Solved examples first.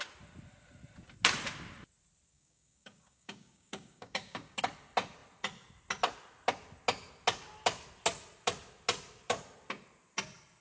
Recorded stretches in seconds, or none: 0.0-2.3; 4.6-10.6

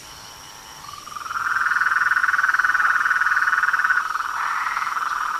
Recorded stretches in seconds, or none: 0.0-2.2

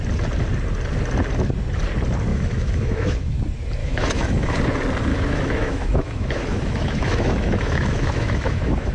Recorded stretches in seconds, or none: 0.0-2.3; 3.3-3.8; 4.5-5.1

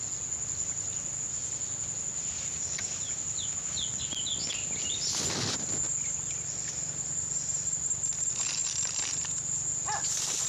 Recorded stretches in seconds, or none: 0.0-10.5

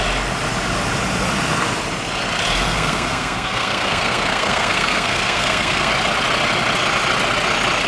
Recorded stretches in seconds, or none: 0.0-2.7; 5.9-7.9

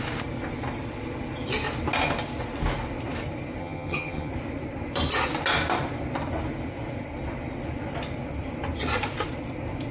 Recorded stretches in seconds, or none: 0.0-3.6; 4.3-9.9

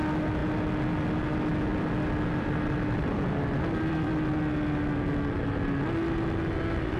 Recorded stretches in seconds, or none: 0.0-1.7; 4.1-7.0